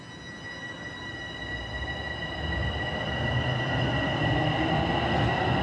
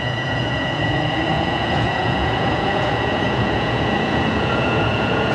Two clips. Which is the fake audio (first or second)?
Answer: second